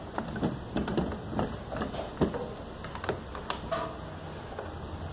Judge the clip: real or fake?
real